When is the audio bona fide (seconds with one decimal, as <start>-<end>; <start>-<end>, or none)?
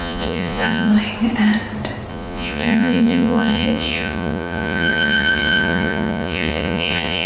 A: 0.9-2.1